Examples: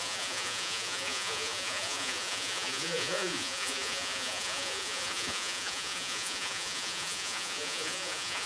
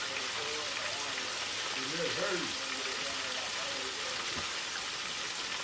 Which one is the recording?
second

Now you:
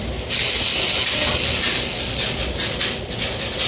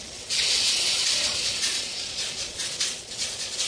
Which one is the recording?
first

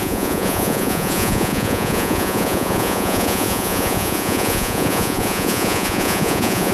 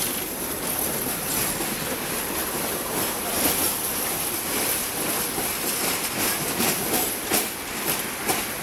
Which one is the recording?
second